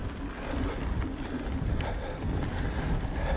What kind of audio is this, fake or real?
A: real